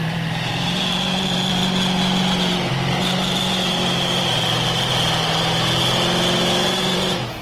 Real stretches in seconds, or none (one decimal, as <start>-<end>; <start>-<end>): 1.6-2.7; 4.9-6.7